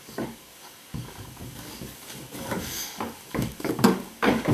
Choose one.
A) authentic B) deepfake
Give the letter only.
B